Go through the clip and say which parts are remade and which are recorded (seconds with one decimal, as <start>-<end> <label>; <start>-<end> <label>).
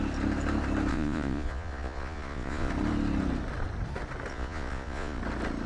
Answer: 0.0-0.9 recorded; 0.9-2.7 remade; 2.7-4.3 recorded; 4.3-5.2 remade; 5.2-5.7 recorded